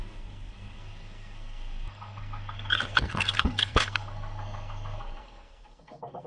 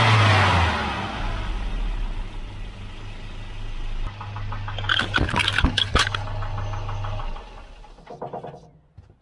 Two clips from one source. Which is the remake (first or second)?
first